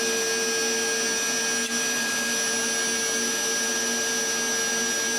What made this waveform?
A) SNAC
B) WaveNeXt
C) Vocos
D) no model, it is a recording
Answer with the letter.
D